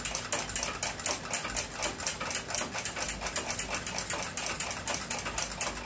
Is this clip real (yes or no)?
yes